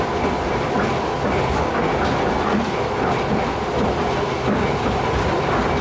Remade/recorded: recorded